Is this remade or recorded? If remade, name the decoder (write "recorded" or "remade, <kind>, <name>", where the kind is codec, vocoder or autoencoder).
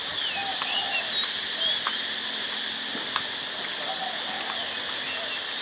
recorded